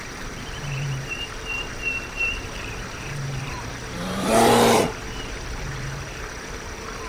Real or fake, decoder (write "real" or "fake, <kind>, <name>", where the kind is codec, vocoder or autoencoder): fake, vocoder, BigVGAN v2